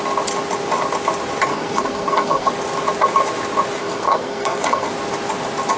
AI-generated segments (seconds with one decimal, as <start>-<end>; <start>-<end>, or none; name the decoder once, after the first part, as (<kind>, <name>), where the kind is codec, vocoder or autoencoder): 1.5-2.5 (codec, SNAC); 3.8-4.9